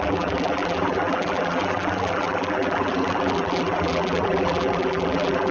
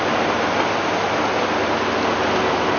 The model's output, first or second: first